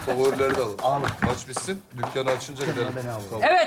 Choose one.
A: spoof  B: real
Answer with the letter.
B